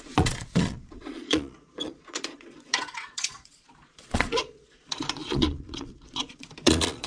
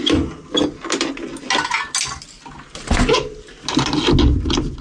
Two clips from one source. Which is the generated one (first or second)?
first